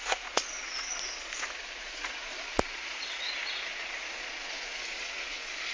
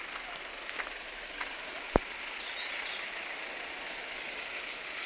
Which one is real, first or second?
second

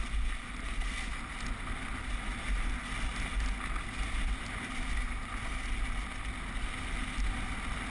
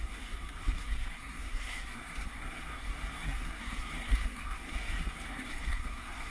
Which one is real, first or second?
first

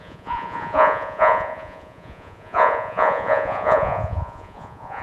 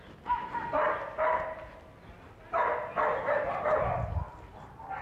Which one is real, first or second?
second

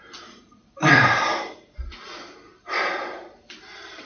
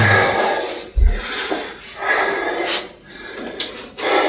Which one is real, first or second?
second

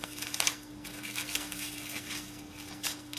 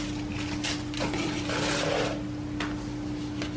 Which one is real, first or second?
second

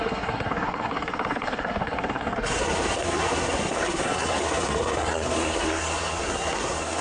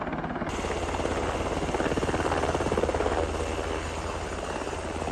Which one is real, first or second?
second